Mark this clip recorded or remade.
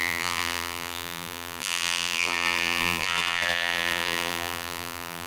remade